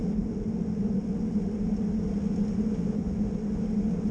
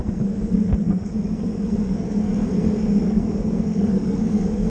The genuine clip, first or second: first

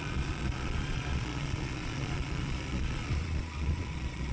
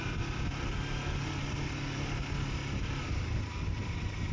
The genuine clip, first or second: second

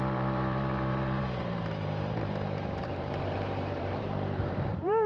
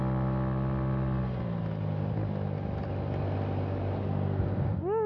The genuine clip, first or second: second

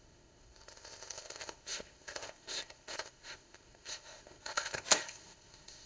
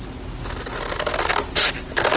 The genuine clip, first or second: second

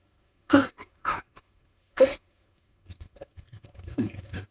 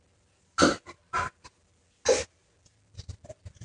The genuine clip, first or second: second